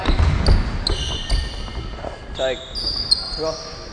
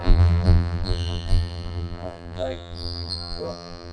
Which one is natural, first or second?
first